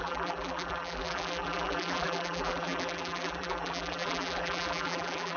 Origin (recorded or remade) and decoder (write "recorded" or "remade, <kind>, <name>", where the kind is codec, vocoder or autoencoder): remade, vocoder, BigVGAN v2